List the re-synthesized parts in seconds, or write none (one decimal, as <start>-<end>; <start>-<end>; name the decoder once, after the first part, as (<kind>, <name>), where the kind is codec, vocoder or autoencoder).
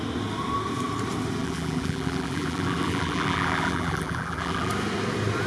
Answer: 1.4-4.7 (vocoder, BigVGAN v2)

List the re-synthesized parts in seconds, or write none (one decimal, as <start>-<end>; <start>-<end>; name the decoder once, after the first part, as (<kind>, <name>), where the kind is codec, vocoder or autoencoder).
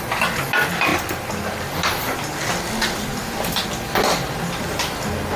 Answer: none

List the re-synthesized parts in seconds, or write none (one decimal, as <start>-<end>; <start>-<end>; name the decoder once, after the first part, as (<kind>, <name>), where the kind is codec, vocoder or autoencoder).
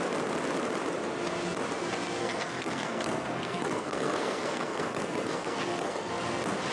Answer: 2.2-6.2 (codec, SNAC)